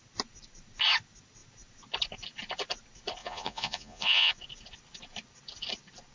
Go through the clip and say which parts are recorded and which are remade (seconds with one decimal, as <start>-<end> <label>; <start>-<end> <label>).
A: 0.0-3.2 recorded; 3.2-4.3 remade; 4.3-6.1 recorded